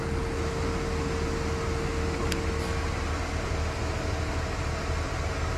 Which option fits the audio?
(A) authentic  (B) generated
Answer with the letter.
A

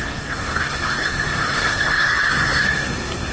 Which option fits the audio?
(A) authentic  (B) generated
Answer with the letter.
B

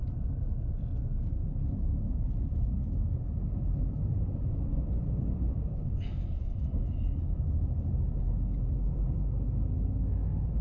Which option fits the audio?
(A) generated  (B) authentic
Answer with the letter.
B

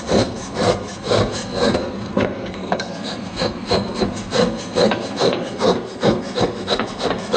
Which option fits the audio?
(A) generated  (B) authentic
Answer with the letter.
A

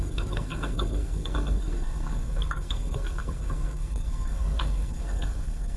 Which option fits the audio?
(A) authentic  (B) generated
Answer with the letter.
B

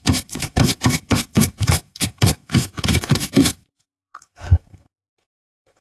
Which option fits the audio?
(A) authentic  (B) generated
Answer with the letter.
B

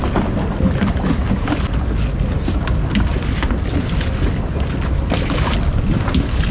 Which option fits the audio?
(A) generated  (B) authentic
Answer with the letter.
B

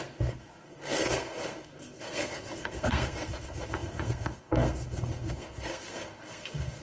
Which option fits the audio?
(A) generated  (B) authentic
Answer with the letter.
A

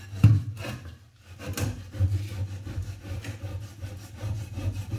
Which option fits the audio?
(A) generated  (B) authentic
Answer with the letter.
B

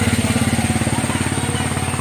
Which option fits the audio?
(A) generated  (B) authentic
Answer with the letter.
B